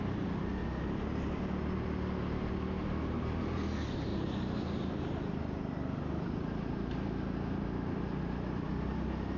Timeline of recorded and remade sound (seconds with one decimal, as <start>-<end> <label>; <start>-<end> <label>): 0.0-9.4 recorded